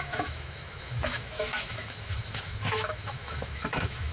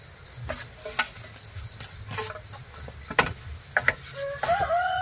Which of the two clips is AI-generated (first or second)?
first